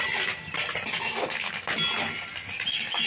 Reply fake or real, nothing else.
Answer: real